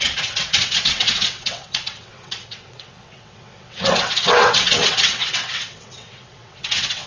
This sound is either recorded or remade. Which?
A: remade